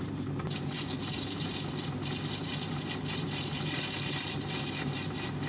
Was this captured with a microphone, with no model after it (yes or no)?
yes